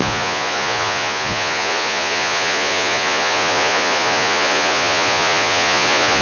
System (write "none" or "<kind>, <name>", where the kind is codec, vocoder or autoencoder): vocoder, Vocos